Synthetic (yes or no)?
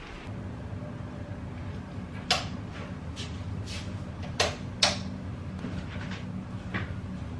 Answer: no